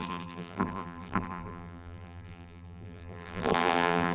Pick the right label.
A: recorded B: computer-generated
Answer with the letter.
B